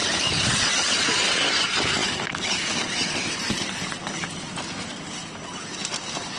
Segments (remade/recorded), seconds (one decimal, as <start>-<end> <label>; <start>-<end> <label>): 0.0-6.4 recorded

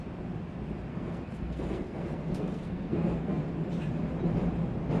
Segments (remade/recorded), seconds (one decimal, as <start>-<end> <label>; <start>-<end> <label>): 0.0-0.9 recorded; 0.9-3.4 remade; 3.4-5.0 recorded

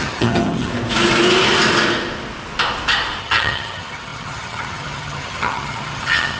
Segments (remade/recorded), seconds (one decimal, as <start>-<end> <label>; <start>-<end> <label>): 0.0-0.7 remade; 0.7-3.2 recorded; 3.2-6.4 remade

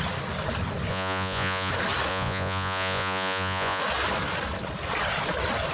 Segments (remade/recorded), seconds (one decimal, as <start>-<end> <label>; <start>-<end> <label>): 0.0-0.9 recorded; 0.9-1.7 remade; 1.7-2.1 recorded; 2.1-3.8 remade; 3.8-5.7 recorded

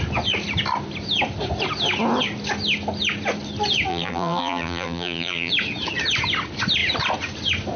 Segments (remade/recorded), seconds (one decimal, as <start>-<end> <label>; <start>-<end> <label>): 0.0-3.9 recorded; 3.9-5.5 remade; 5.5-7.8 recorded

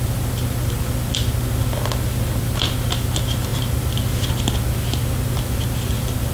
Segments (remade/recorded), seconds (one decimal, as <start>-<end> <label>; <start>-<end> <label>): 0.0-6.3 recorded

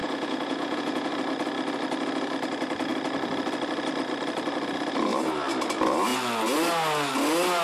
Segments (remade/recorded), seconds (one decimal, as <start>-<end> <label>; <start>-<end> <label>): 0.0-1.1 remade; 1.1-7.6 recorded